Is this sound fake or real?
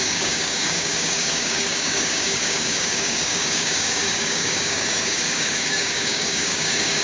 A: fake